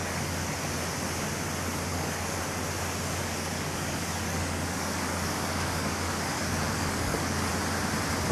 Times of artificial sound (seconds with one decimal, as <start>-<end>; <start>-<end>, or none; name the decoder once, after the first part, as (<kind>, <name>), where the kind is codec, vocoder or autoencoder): 0.0-0.5 (codec, DAC); 1.9-2.4; 3.2-7.5